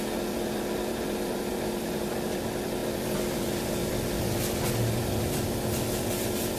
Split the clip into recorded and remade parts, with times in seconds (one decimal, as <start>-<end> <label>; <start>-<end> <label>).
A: 0.0-6.6 recorded